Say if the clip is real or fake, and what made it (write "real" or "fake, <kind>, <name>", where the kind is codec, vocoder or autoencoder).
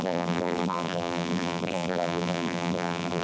fake, vocoder, BigVGAN v2